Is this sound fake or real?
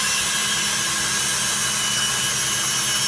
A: real